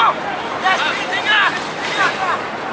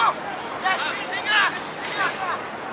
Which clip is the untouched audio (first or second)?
second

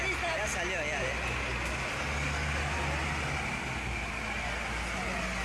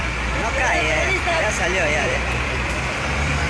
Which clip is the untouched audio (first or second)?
first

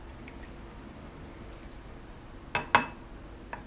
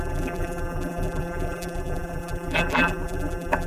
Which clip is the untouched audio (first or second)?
first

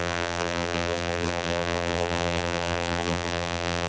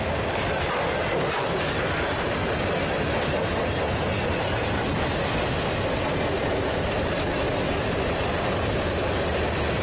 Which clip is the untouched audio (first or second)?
second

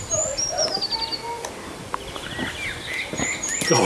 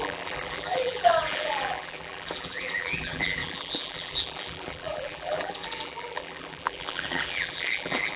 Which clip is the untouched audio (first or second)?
first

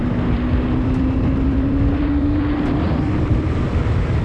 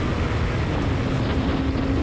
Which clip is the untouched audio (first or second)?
second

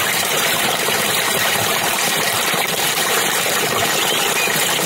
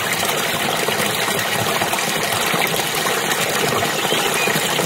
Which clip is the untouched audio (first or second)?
second